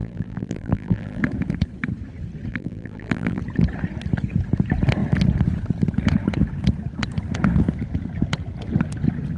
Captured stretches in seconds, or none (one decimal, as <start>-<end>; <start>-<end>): 1.2-2.5; 3.4-9.4